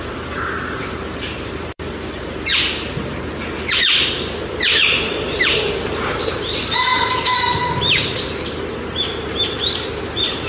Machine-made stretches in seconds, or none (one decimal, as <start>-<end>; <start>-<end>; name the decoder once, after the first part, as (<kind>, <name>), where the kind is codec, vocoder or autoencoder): 0.0-2.5 (vocoder, BigVGAN v2); 4.5-6.9; 7.8-10.5